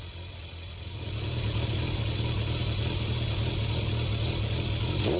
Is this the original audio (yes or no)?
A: yes